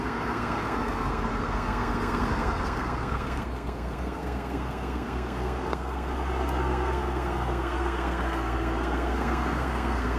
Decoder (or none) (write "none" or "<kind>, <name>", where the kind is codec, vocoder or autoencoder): codec, SNAC